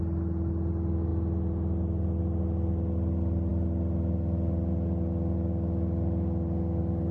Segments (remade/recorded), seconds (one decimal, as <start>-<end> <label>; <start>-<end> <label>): 0.0-7.1 recorded